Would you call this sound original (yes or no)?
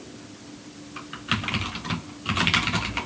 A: yes